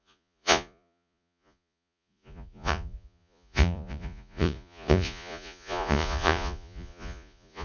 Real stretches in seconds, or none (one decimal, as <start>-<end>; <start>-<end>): none